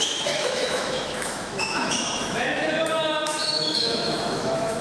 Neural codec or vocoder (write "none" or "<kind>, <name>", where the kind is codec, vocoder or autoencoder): autoencoder, DAC-VAE